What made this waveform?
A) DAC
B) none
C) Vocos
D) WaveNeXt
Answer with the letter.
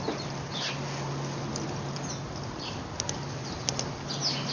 B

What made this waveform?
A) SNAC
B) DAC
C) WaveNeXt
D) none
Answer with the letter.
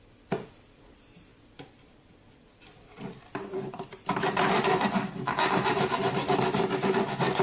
D